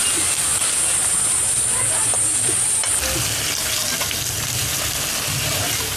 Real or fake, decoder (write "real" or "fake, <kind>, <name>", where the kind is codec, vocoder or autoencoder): real